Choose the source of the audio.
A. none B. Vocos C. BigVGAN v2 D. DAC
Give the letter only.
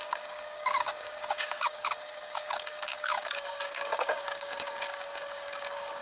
D